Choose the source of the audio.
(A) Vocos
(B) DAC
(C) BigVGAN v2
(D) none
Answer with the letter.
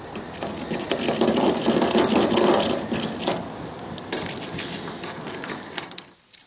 D